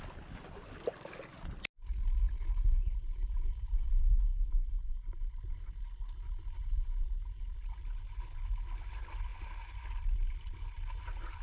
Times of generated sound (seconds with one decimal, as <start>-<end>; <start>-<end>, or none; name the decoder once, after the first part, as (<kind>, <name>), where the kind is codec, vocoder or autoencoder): 2.7-7.8 (vocoder, BigVGAN v2)